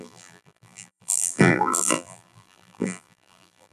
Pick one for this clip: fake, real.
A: fake